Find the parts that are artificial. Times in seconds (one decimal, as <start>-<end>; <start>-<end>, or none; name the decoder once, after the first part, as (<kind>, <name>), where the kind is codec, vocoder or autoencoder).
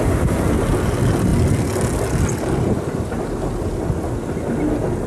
none